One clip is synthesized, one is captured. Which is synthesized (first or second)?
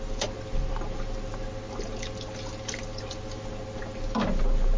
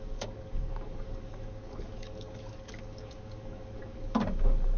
second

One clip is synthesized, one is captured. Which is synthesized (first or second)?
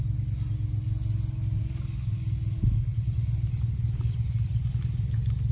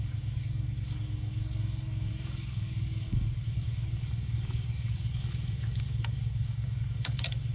second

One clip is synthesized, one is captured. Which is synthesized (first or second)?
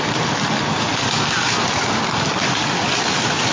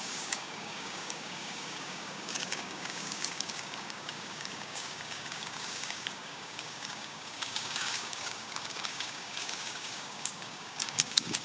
second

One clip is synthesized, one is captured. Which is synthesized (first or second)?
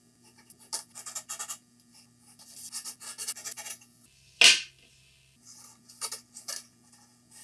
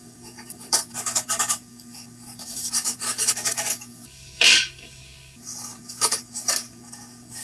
second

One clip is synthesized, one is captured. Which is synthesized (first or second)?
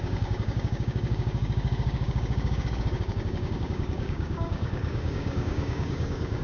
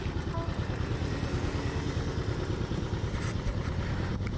first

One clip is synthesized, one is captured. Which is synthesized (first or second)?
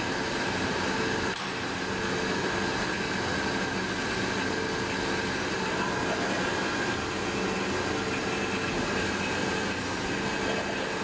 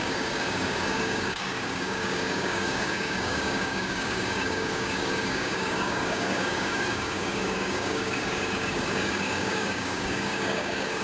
second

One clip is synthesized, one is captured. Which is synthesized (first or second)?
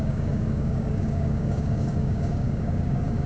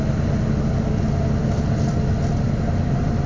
first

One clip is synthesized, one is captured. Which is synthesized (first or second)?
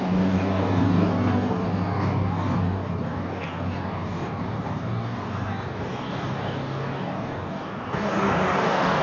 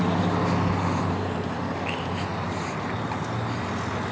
first